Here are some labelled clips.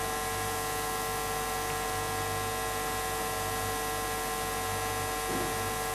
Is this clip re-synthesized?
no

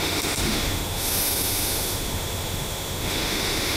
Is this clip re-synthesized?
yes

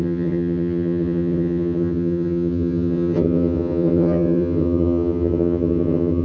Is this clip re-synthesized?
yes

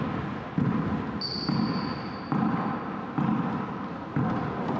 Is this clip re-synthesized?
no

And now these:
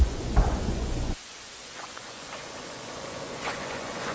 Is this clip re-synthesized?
yes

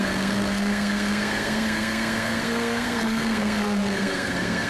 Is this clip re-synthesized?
yes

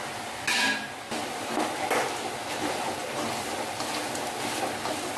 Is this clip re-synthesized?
no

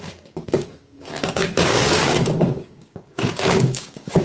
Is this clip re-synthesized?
yes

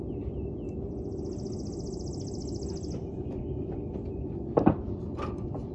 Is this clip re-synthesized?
no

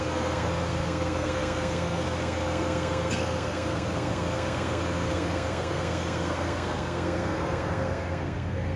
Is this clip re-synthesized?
yes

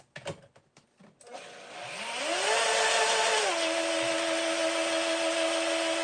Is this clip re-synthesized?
no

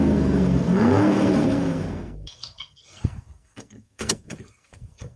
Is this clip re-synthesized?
yes